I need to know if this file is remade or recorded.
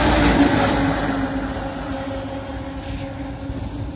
recorded